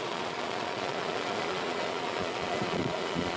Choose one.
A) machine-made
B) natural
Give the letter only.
A